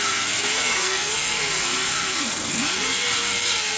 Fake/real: fake